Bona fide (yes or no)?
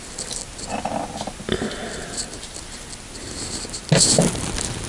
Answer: yes